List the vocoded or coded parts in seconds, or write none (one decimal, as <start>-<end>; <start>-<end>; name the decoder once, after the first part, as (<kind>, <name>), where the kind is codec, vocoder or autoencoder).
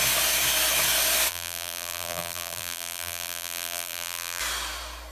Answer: 1.3-4.4 (vocoder, BigVGAN v2)